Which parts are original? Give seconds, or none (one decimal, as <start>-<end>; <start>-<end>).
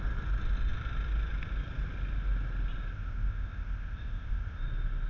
0.0-2.9; 4.6-5.1